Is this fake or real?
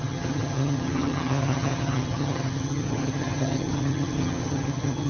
fake